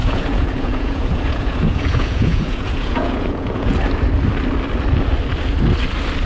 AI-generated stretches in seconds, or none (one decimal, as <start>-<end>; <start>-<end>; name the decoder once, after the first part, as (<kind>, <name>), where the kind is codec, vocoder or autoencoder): 0.0-3.8 (vocoder, Vocos)